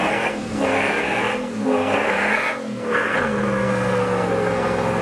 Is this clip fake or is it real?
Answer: fake